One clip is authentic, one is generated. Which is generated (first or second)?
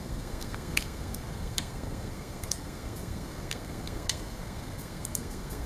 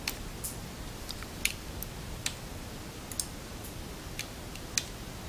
first